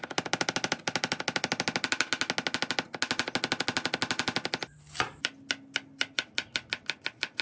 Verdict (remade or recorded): recorded